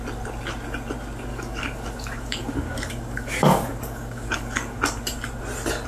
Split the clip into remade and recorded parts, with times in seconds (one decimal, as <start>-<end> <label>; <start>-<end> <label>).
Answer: 0.0-1.3 recorded; 1.3-4.8 remade; 4.8-5.9 recorded